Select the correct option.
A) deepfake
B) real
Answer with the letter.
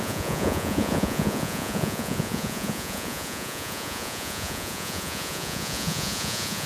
A